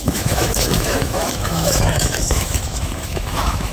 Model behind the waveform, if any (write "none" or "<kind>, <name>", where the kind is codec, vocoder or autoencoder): autoencoder, DAC-VAE